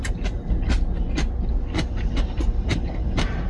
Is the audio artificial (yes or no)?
no